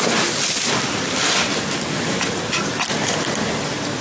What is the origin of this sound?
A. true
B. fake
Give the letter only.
A